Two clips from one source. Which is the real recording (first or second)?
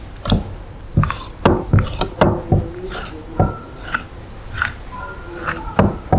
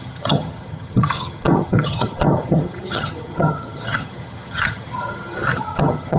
first